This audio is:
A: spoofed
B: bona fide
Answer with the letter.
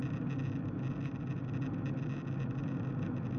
B